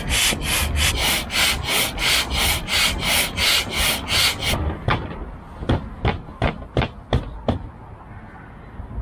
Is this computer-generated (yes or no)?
no